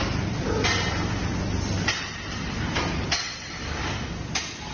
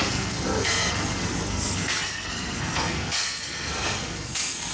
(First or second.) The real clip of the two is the first